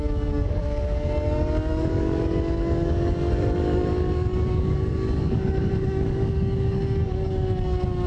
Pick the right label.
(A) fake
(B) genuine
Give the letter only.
A